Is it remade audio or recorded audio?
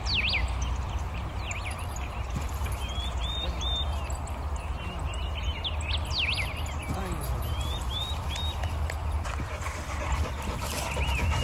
recorded